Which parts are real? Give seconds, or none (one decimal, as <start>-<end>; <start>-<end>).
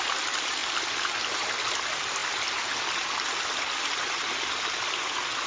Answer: 0.0-5.5